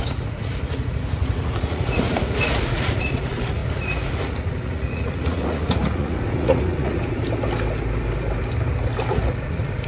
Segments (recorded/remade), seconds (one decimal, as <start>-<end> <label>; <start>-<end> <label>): 0.0-7.2 remade; 7.2-9.1 recorded; 9.1-9.9 remade